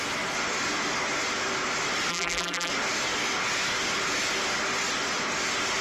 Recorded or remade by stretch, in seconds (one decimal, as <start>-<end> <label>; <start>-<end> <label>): 0.0-2.1 recorded; 2.1-2.7 remade; 2.7-5.8 recorded

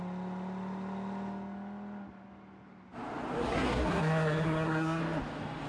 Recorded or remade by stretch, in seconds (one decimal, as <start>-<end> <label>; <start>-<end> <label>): 0.0-3.5 recorded; 3.5-5.0 remade; 5.0-5.7 recorded

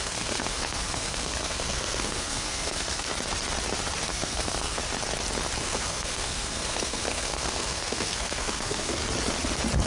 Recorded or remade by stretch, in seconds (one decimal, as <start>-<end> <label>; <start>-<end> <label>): 0.0-3.1 remade; 3.1-4.1 recorded; 4.1-4.8 remade; 4.8-5.6 recorded; 5.6-9.0 remade; 9.0-9.9 recorded

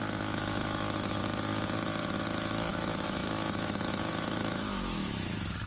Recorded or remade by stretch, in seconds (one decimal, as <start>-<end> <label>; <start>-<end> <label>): 0.0-1.2 remade; 1.2-2.7 recorded; 2.7-5.7 remade

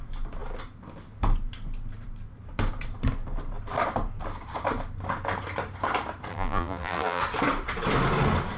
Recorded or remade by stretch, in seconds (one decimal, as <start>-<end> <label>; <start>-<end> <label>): 0.0-6.3 recorded; 6.3-7.2 remade; 7.2-8.6 recorded

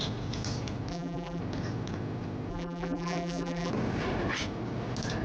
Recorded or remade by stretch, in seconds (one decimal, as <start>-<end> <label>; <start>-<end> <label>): 0.0-0.9 recorded; 0.9-1.4 remade; 1.4-2.5 recorded; 2.5-3.7 remade; 3.7-5.2 recorded

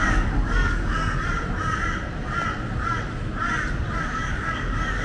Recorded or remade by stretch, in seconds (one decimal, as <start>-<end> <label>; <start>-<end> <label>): 0.0-1.0 remade; 1.0-4.0 recorded; 4.0-5.0 remade